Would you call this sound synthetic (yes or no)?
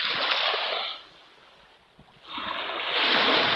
no